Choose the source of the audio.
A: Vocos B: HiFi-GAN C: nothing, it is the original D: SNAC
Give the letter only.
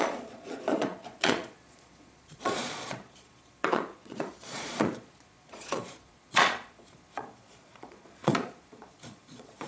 A